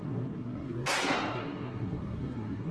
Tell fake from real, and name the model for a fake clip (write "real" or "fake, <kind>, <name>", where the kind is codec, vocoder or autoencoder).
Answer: fake, codec, SNAC